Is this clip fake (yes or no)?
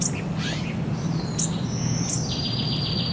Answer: no